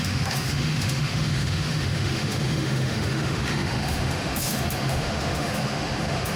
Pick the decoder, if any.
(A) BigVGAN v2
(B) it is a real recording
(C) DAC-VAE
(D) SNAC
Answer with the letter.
C